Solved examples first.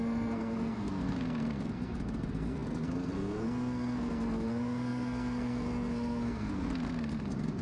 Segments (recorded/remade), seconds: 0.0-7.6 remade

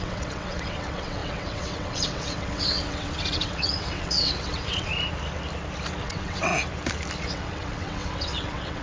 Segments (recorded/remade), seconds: 0.0-4.9 remade; 4.9-6.0 recorded; 6.0-6.5 remade; 6.5-7.2 recorded; 7.2-8.8 remade

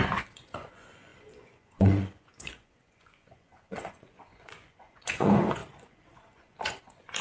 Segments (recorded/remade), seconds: 0.0-7.2 remade